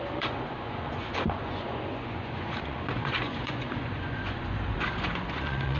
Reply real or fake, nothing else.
fake